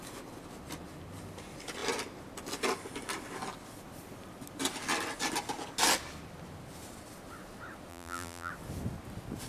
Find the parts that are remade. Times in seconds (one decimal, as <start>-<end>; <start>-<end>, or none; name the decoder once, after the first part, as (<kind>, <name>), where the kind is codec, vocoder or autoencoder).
7.9-8.5 (vocoder, BigVGAN v2)